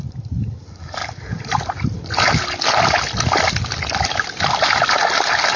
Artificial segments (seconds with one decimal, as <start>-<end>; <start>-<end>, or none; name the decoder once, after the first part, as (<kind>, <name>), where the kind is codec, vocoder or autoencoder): none